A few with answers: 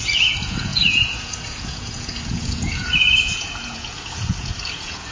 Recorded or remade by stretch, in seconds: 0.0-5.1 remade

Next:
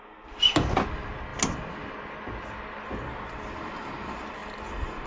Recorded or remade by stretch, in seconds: 0.0-5.1 recorded

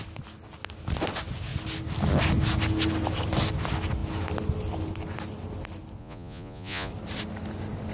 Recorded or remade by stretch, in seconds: 0.0-6.0 recorded; 6.0-6.9 remade; 6.9-7.9 recorded

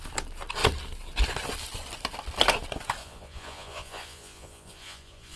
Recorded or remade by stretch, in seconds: 0.0-3.0 recorded; 3.0-5.4 remade

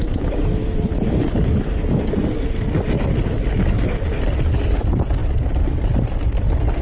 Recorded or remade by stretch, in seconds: 0.0-6.8 recorded

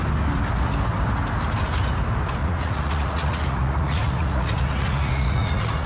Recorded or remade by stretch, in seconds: 0.0-2.4 recorded; 2.4-5.9 remade

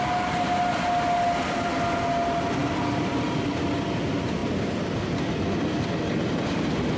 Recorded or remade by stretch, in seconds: 0.0-7.0 recorded